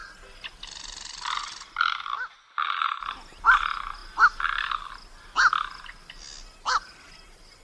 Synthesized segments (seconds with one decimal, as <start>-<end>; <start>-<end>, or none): none